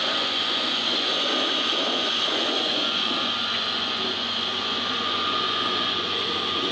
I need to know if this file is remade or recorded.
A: remade